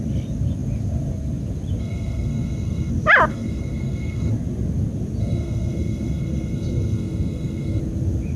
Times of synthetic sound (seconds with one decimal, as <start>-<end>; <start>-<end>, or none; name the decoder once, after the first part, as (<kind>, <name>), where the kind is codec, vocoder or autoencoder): 1.8-2.9 (codec, SNAC); 3.3-4.3; 5.2-7.8